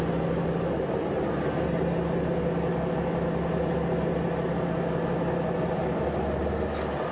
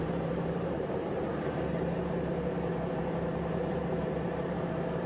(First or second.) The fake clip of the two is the second